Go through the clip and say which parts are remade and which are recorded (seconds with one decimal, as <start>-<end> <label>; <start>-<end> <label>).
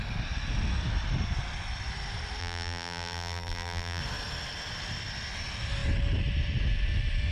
0.0-2.4 recorded; 2.4-4.0 remade; 4.0-7.3 recorded